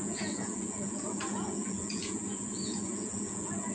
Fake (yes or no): yes